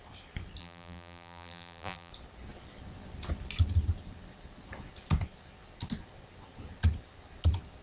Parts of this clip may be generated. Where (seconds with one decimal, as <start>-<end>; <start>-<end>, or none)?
0.6-2.1